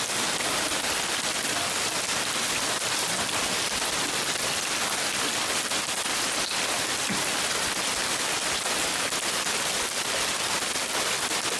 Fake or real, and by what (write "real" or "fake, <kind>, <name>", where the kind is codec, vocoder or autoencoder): real